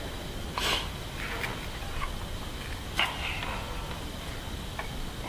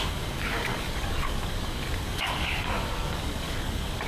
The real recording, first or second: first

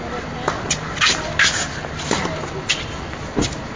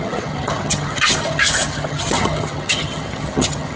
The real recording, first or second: first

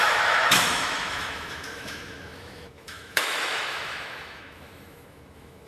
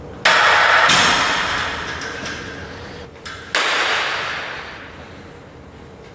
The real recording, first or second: second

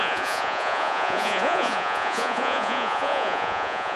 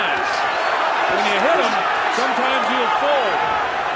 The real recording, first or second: second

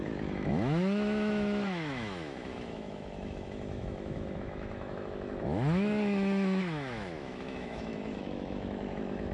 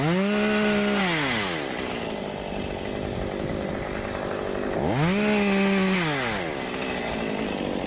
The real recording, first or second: second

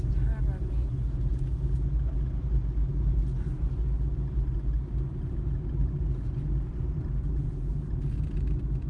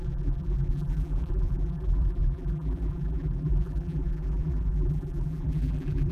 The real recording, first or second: first